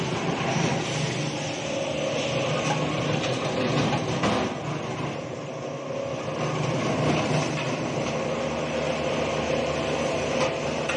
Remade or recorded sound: recorded